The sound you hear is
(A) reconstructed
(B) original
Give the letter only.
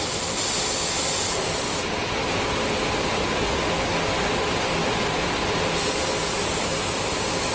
B